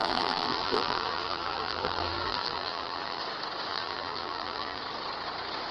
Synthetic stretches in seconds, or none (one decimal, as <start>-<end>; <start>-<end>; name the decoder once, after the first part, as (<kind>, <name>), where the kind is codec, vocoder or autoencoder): 0.0-3.2 (vocoder, BigVGAN v2); 3.7-4.8